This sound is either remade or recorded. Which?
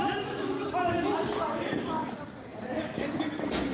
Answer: recorded